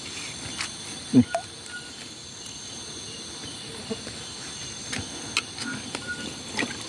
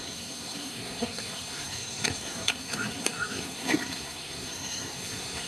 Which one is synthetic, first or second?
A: second